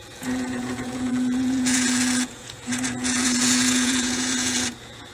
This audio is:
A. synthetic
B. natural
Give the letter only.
A